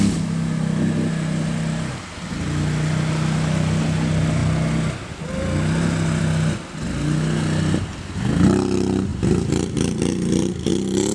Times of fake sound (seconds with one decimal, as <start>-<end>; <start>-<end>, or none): 9.1-10.7